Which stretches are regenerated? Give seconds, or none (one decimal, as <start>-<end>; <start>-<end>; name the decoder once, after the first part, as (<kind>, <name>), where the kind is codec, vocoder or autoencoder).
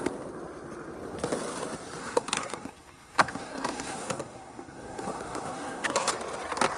2.0-6.1 (codec, SNAC)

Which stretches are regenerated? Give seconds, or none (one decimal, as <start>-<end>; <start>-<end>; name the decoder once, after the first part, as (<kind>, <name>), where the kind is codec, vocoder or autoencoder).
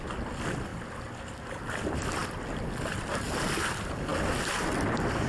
none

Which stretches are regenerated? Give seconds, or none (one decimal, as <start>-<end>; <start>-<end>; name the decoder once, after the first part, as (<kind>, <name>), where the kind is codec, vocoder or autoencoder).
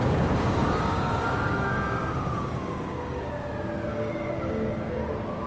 0.0-3.3 (codec, DAC); 3.9-5.1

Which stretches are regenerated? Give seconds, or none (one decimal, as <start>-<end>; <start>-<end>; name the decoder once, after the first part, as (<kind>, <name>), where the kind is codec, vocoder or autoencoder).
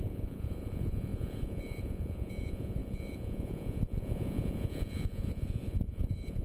0.0-6.4 (vocoder, Vocos)